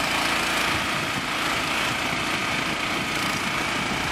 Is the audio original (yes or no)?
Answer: yes